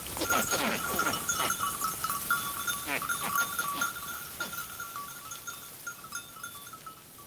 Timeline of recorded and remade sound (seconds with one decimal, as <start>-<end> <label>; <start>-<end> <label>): 0.0-7.3 recorded